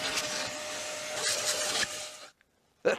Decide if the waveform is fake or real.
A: real